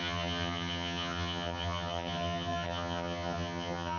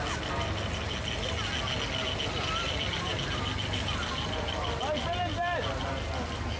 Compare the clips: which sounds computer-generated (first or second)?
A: first